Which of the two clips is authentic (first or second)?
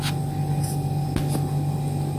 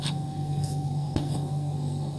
first